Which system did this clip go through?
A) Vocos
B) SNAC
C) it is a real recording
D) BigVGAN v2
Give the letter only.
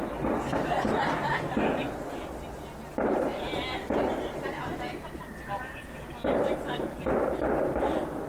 C